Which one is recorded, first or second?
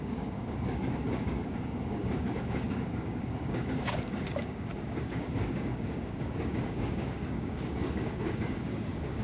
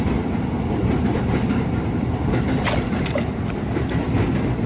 second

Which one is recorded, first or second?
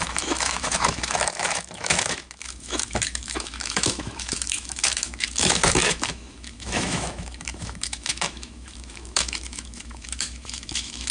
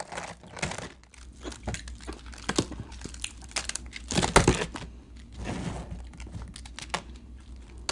second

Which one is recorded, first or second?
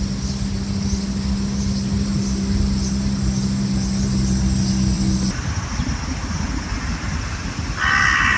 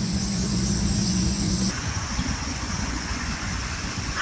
first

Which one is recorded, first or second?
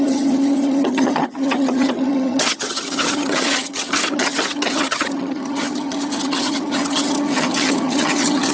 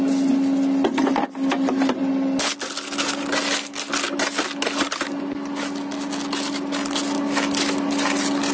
second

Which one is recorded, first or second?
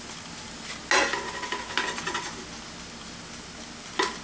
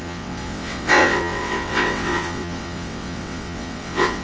first